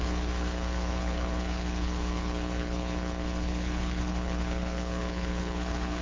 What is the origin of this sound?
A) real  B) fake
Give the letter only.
B